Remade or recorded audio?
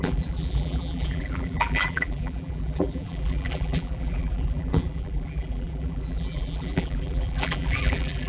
remade